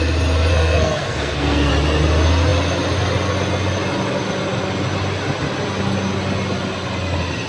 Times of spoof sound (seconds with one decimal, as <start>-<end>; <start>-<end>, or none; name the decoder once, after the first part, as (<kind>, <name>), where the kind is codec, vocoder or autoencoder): 0.5-1.7 (codec, SNAC)